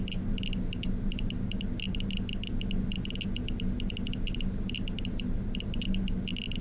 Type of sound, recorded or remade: recorded